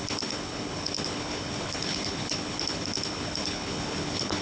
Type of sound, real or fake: fake